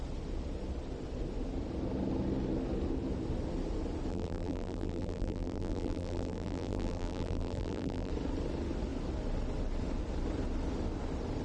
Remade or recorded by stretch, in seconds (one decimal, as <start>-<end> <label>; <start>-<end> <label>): 0.0-4.1 recorded; 4.1-8.1 remade; 8.1-11.4 recorded